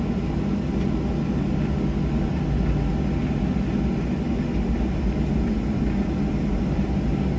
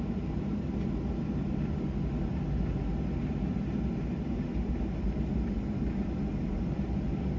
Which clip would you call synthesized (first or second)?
second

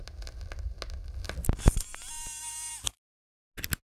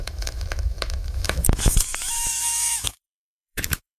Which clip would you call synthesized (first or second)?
second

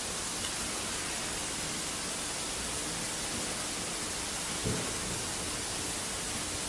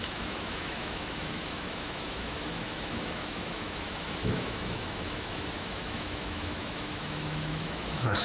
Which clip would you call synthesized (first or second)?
second